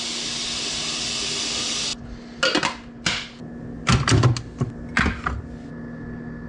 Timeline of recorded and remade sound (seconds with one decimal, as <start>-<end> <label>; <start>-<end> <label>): 0.0-6.5 recorded